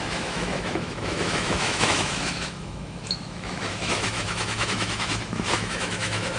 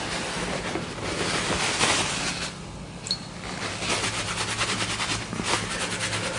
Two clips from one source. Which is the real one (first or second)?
second